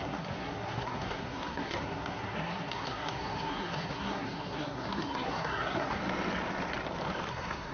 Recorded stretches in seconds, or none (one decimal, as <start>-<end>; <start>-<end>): 6.0-7.3